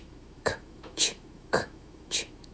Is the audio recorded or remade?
remade